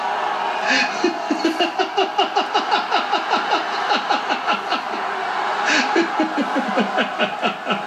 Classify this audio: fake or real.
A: real